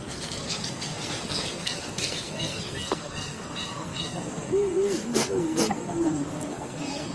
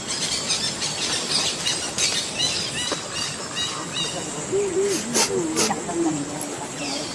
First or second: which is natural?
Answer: second